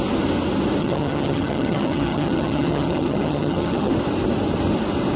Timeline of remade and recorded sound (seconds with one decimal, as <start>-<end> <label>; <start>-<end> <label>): 0.0-0.8 recorded; 0.8-3.9 remade; 3.9-5.2 recorded